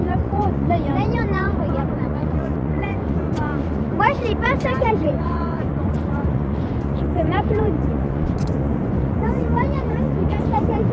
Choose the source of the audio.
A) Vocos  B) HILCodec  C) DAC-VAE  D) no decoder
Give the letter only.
A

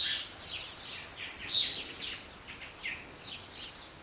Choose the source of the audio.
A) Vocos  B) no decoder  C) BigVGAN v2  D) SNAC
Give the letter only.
B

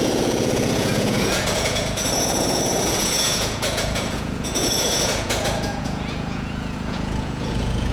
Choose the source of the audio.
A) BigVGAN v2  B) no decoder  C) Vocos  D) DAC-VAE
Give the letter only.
C